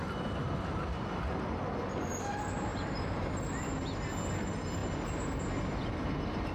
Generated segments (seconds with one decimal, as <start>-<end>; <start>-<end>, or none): none